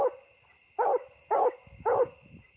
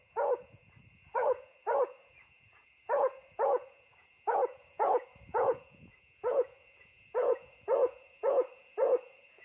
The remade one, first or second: second